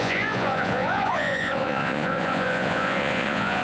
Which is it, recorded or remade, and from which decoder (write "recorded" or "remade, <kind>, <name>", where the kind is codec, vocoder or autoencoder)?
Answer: remade, vocoder, Vocos